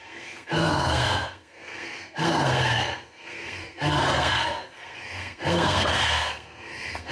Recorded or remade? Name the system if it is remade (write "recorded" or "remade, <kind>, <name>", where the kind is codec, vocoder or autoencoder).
remade, codec, SNAC